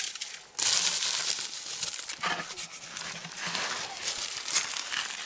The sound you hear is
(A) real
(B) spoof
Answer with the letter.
A